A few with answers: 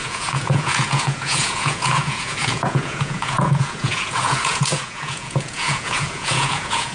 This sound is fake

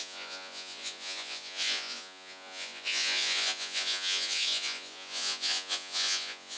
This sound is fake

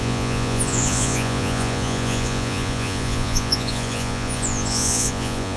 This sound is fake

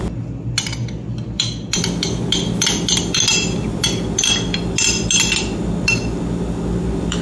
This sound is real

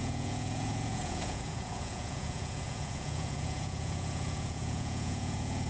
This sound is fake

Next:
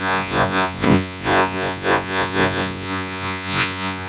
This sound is fake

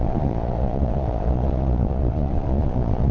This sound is fake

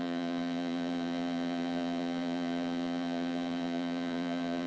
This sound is fake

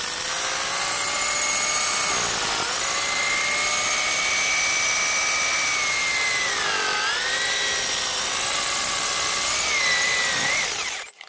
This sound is real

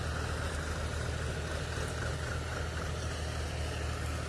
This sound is real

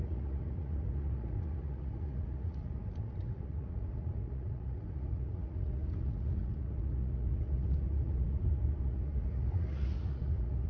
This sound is fake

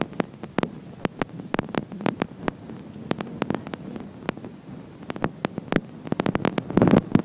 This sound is real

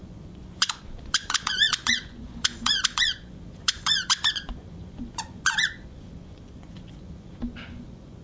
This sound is fake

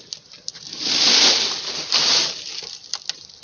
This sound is real